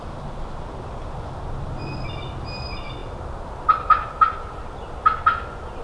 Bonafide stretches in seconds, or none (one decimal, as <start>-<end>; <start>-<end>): 0.0-5.8